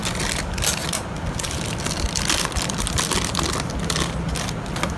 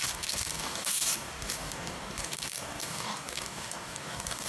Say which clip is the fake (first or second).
second